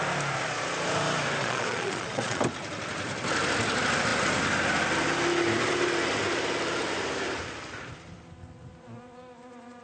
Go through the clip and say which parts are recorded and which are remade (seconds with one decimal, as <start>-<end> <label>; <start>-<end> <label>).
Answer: 0.0-1.4 recorded; 1.4-2.4 remade; 2.4-9.8 recorded